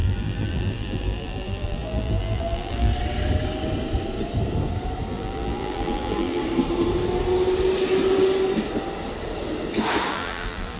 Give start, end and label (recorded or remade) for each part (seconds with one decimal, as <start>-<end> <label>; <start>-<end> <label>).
0.0-2.9 remade; 2.9-5.1 recorded; 5.1-6.4 remade; 6.4-10.1 recorded; 10.1-10.8 remade